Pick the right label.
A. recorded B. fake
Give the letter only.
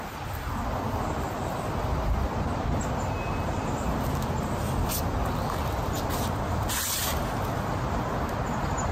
A